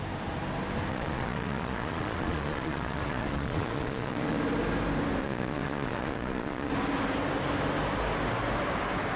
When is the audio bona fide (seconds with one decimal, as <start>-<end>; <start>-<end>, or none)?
0.0-0.9; 4.4-5.2; 6.7-9.2